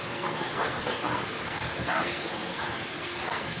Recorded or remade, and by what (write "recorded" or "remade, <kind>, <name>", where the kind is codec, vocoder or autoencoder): remade, codec, SNAC